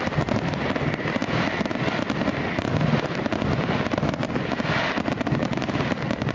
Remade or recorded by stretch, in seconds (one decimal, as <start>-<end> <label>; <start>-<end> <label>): 0.0-6.3 recorded